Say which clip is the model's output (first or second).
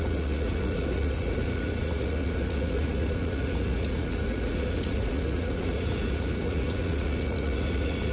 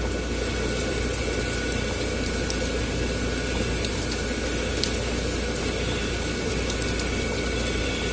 first